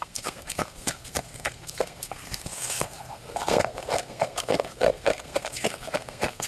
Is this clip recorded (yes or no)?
no